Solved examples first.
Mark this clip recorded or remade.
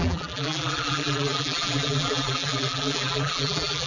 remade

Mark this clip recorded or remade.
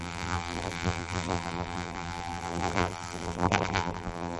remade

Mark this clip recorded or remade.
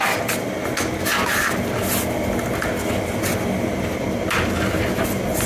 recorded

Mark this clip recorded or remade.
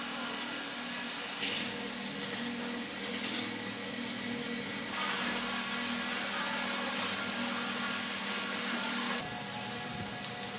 recorded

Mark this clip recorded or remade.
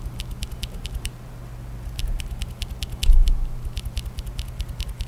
recorded